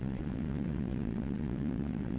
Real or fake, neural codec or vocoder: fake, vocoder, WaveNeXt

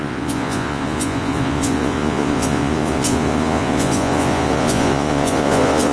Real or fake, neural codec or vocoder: fake, vocoder, Vocos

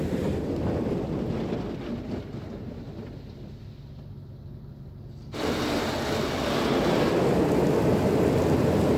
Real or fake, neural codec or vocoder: real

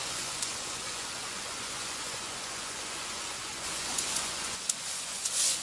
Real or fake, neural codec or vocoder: fake, vocoder, Vocos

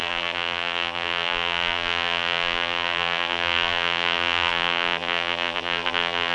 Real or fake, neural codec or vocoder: fake, vocoder, BigVGAN v2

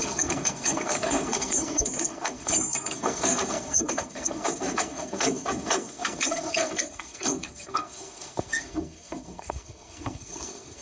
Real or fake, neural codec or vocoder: fake, codec, SNAC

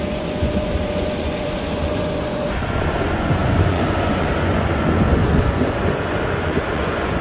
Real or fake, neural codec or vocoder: fake, vocoder, Vocos